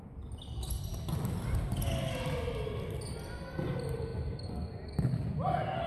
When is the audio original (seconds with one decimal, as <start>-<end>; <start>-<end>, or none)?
0.0-5.9